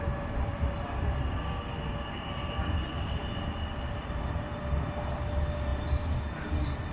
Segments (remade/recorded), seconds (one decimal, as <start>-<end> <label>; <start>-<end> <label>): 0.0-6.9 recorded